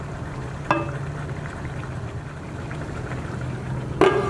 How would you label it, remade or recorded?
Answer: recorded